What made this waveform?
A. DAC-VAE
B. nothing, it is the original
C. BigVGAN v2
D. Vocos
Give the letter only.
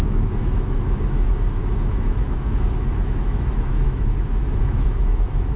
A